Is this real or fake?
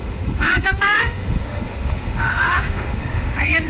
fake